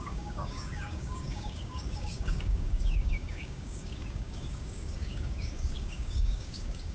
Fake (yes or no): yes